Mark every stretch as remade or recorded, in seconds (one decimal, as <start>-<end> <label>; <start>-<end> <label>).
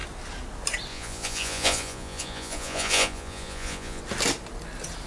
0.0-0.9 recorded; 0.9-4.0 remade; 4.0-5.1 recorded